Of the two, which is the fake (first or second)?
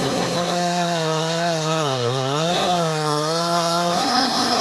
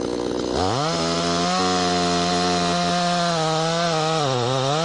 first